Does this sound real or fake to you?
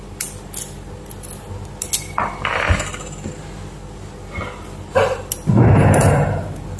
real